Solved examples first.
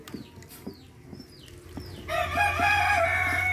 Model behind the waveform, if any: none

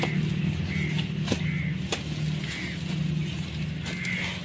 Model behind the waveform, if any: none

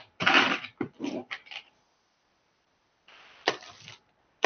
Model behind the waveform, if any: vocoder, BigVGAN v2